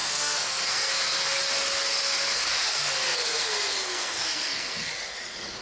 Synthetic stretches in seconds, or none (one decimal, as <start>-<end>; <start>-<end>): 0.0-1.4; 2.0-4.9